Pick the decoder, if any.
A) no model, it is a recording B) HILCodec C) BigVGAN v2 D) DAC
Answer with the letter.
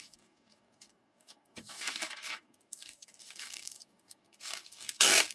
D